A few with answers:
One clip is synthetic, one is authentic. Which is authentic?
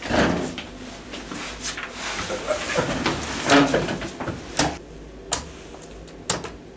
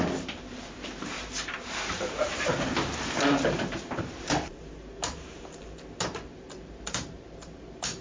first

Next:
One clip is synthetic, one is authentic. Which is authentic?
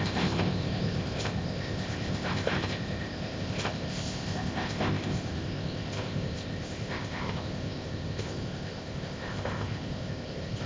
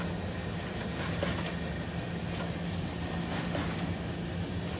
second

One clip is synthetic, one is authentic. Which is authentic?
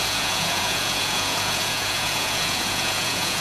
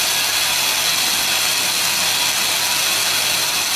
second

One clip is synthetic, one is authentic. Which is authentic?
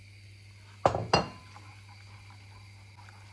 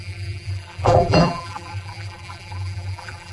first